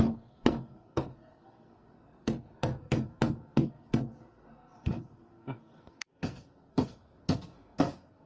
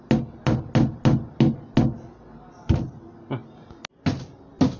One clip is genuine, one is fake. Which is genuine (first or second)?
second